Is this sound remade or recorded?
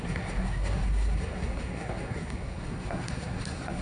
remade